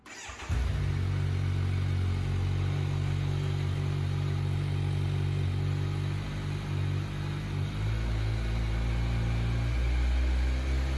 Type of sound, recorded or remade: recorded